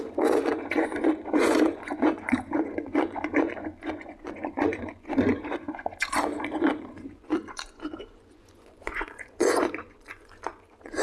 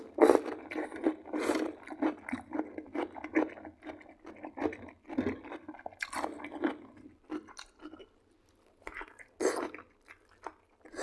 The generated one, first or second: first